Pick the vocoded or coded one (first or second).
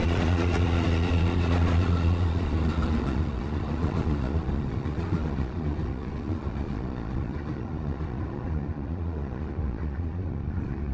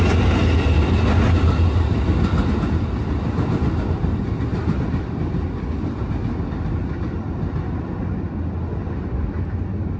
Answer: first